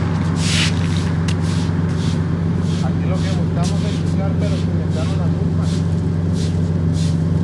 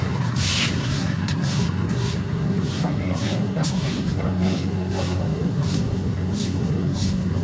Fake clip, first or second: second